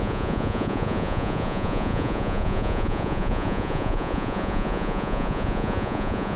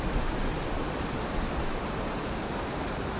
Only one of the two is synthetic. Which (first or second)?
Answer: first